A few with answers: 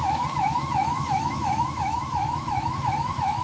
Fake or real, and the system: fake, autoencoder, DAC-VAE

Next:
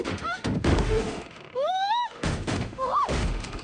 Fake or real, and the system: fake, autoencoder, DAC-VAE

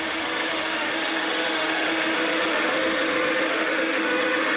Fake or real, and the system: fake, autoencoder, DAC-VAE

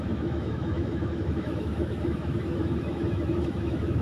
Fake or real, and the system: fake, autoencoder, DAC-VAE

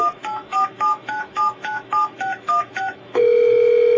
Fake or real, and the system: fake, autoencoder, DAC-VAE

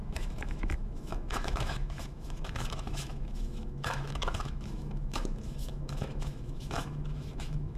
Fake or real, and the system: fake, autoencoder, DAC-VAE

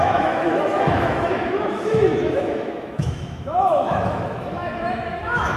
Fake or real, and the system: fake, autoencoder, DAC-VAE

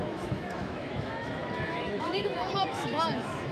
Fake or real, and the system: fake, autoencoder, DAC-VAE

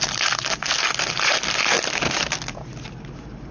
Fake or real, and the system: real